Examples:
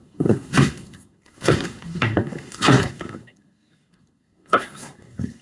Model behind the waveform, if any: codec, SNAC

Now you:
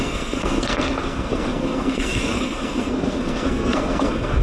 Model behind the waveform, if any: codec, SNAC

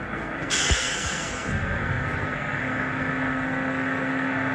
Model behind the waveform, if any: codec, SNAC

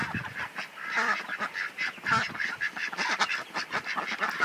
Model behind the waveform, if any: none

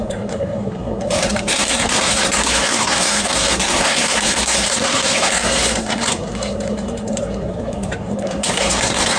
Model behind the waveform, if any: codec, SNAC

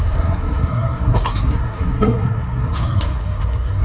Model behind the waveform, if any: codec, SNAC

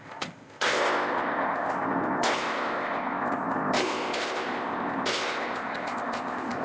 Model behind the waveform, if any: codec, ZipCodec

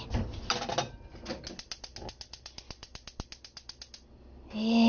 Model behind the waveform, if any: none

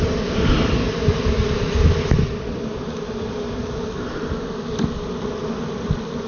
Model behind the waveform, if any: none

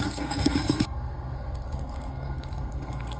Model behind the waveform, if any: codec, SNAC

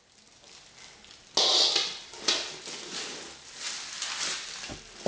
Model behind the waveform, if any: none